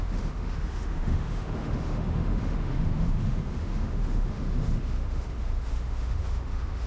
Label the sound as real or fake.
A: fake